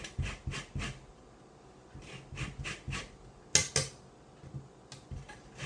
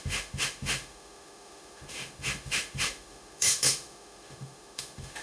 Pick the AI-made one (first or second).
second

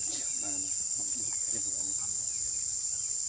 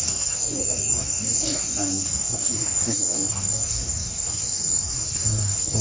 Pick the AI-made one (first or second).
second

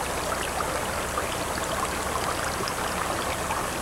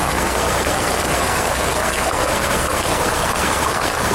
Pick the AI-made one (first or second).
second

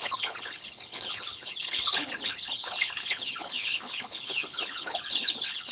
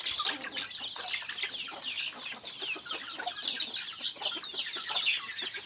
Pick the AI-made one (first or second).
first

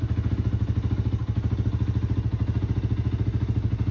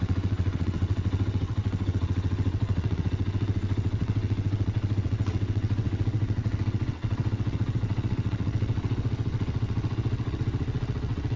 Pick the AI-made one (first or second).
second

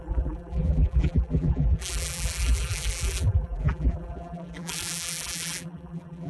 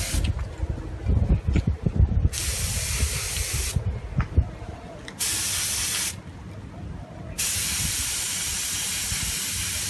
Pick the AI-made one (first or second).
first